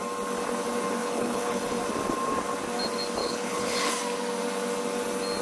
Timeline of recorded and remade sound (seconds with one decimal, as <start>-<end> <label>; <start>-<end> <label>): 0.0-1.0 recorded; 1.0-1.8 remade; 1.8-3.2 recorded; 3.2-3.9 remade; 3.9-5.4 recorded